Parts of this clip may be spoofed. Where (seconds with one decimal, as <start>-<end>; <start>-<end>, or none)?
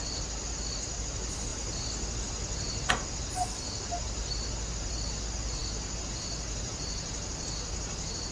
none